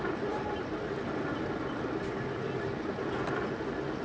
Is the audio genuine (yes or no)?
yes